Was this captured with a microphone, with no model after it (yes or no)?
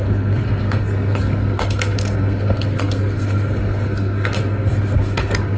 no